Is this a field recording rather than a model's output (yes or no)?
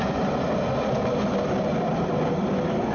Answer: yes